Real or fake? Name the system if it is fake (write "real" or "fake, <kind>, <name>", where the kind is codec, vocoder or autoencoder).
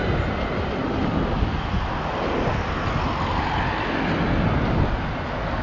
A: real